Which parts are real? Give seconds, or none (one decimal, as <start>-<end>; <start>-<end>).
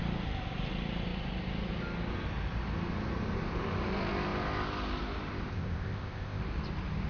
0.0-5.5; 6.4-7.1